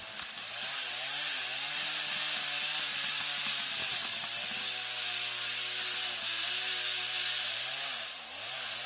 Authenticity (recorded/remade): remade